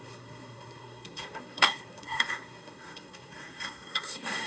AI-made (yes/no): yes